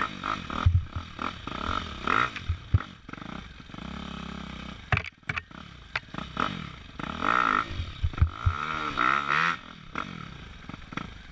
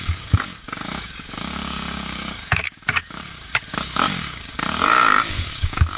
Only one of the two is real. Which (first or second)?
first